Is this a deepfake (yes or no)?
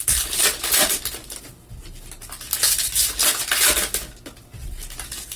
no